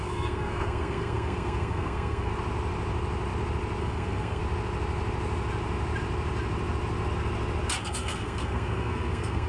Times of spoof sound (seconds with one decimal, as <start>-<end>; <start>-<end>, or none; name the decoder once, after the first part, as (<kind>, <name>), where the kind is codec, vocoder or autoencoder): 0.0-2.3 (codec, SNAC); 3.8-4.4; 7.8-9.5